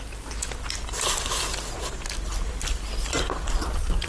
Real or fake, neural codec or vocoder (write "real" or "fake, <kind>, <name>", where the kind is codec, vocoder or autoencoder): real